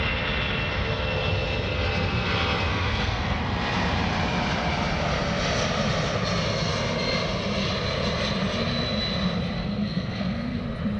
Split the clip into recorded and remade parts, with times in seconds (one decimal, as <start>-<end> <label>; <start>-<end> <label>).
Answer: 0.0-2.7 recorded; 2.7-3.4 remade; 3.4-9.6 recorded; 9.6-10.6 remade; 10.6-11.0 recorded